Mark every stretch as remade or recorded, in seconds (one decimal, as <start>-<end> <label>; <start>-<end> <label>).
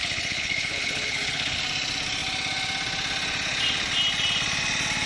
0.0-1.6 remade; 1.6-5.1 recorded